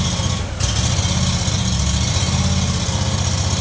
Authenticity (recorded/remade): recorded